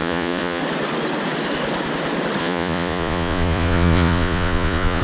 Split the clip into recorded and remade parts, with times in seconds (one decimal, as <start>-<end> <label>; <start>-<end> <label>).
0.0-0.6 remade; 0.6-2.4 recorded; 2.4-5.0 remade